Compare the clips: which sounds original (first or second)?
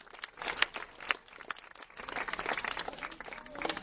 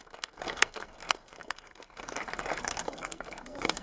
first